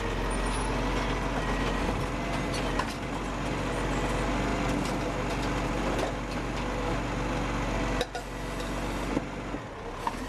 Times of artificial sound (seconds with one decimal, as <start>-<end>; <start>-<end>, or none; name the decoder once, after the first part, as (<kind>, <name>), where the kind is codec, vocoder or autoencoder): none